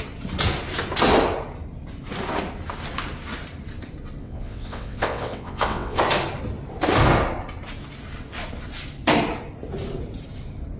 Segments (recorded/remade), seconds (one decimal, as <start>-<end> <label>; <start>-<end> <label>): 0.0-4.2 recorded; 4.2-6.0 remade; 6.0-10.8 recorded